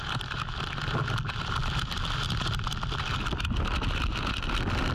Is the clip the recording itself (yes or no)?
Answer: yes